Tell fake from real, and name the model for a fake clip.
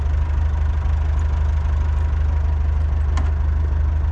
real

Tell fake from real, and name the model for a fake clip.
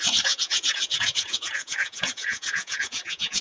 fake, vocoder, Vocos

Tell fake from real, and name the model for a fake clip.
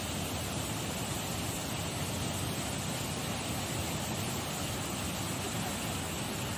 real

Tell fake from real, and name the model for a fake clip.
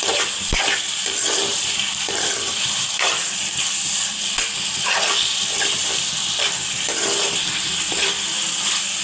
fake, vocoder, BigVGAN v2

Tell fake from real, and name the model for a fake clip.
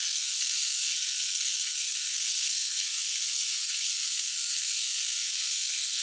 fake, codec, SNAC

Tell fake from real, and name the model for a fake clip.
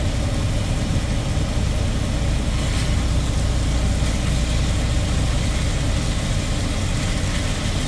real